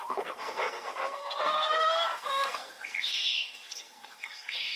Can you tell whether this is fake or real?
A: fake